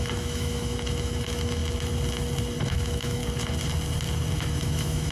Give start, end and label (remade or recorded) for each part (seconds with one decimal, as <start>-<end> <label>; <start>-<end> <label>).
0.0-1.6 remade; 1.6-2.6 recorded; 2.6-3.2 remade; 3.2-4.5 recorded; 4.5-5.1 remade